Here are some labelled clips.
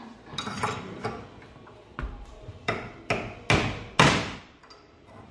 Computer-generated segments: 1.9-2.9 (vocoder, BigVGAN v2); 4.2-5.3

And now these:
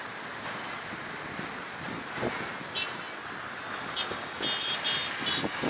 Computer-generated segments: none

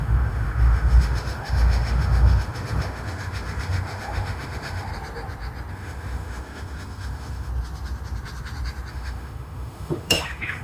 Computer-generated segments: 0.0-4.9 (autoencoder, DAC-VAE); 5.7-7.5; 8.9-10.6

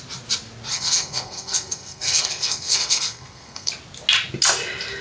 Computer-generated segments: 0.7-3.7 (codec, SNAC)

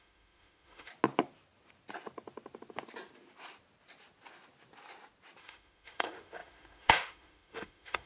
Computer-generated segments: 0.0-0.9 (autoencoder, DAC-VAE); 5.4-8.1

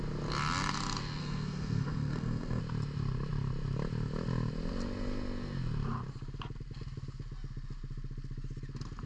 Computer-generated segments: 1.2-2.6 (codec, SNAC)